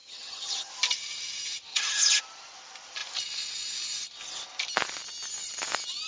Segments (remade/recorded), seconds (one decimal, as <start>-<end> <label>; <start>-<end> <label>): 0.0-0.7 remade; 0.7-1.7 recorded; 1.7-2.2 remade; 2.2-6.1 recorded